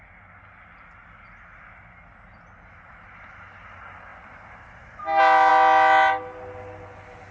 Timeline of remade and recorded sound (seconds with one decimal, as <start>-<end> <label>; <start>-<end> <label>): 0.0-7.3 recorded